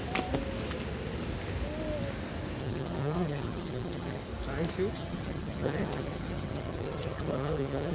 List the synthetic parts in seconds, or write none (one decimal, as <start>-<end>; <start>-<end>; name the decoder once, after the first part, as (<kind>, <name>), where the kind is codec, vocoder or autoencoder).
2.6-4.2 (vocoder, HiFi-GAN); 4.9-7.9